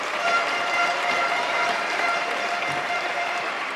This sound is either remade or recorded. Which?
remade